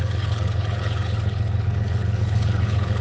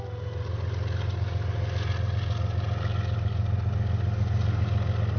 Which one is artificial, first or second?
first